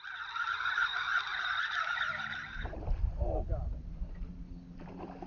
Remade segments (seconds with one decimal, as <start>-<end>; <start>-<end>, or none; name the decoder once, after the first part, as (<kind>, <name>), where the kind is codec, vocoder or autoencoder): none